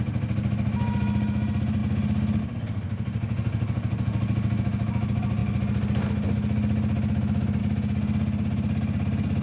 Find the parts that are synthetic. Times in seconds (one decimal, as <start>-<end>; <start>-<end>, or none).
none